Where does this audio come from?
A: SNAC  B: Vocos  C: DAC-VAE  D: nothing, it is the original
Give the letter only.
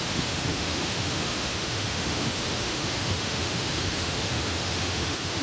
C